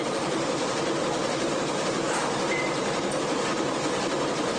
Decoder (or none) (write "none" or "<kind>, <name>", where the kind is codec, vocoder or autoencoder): vocoder, BigVGAN v2